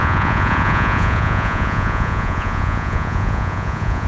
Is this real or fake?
fake